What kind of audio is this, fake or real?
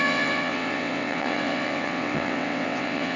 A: fake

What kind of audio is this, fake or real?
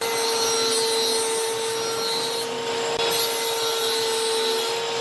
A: real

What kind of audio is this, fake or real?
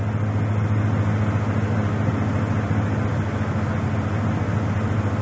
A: real